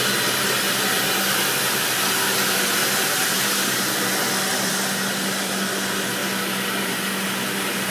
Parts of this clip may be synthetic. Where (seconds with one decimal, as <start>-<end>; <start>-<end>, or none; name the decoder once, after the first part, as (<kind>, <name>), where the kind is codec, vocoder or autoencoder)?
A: 2.8-3.6 (vocoder, BigVGAN v2)